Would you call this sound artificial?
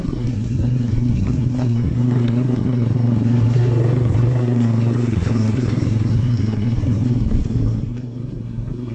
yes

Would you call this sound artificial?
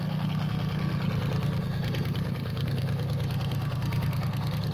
yes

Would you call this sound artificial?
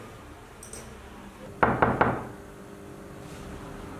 no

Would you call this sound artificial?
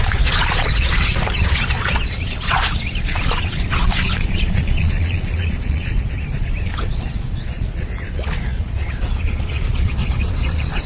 yes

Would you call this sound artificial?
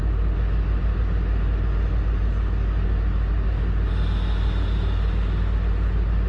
no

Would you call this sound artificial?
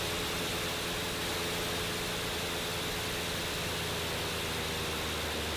no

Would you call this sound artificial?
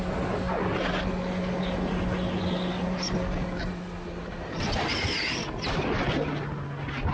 no